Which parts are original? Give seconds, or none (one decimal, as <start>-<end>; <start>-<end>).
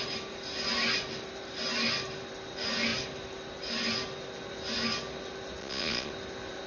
0.0-5.6; 6.1-6.7